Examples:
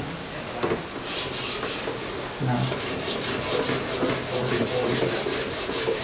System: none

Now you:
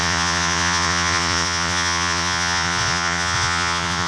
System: vocoder, Vocos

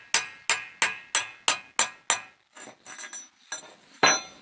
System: none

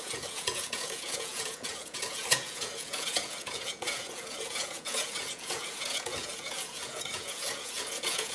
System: vocoder, Vocos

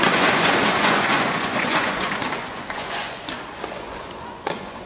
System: vocoder, Vocos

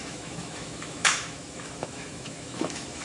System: autoencoder, DAC-VAE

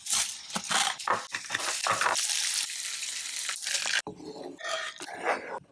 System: none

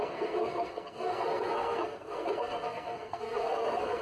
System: codec, SNAC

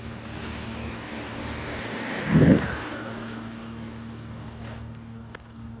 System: codec, DAC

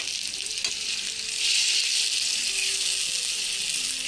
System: none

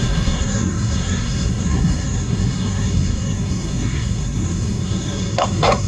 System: codec, SNAC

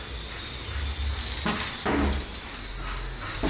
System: none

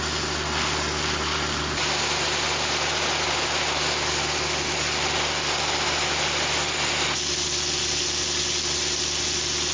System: none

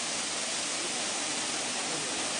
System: none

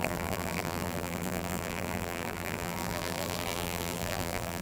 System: vocoder, BigVGAN v2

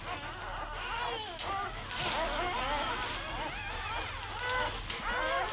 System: none